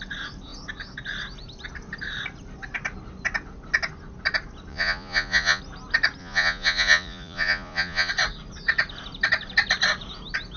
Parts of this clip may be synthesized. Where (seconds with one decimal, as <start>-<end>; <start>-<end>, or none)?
4.7-5.6; 6.2-8.1